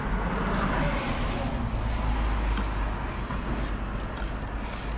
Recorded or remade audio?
recorded